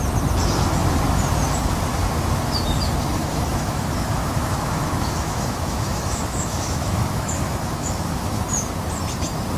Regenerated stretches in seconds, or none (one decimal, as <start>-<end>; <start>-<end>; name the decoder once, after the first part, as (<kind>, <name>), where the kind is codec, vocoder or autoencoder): 3.2-8.4 (autoencoder, DAC-VAE)